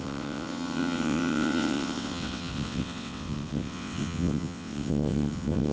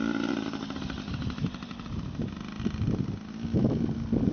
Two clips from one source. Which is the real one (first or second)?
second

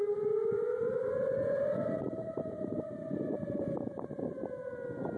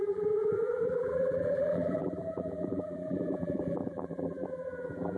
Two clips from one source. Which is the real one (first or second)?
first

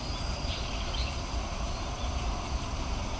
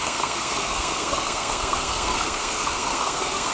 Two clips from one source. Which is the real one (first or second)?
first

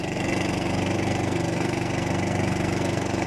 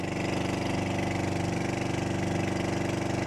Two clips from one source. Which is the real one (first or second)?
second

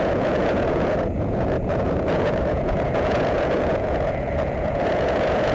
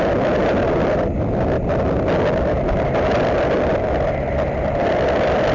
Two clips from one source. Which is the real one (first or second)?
second